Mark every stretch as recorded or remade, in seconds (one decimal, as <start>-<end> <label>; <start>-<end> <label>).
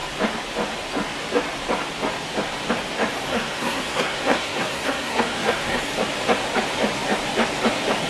0.0-3.3 recorded; 3.3-5.8 remade; 5.8-8.1 recorded